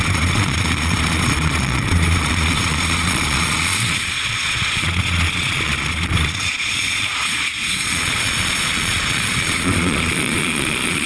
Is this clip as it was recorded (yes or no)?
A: no